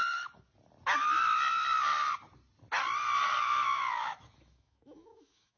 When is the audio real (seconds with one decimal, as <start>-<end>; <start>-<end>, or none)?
0.0-3.4